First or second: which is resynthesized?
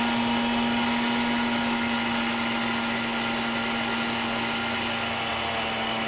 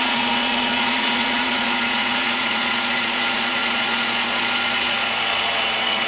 second